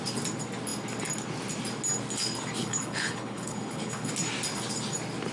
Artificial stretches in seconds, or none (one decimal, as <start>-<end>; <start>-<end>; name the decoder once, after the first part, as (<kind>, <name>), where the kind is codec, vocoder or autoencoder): 2.6-4.1 (codec, HILCodec)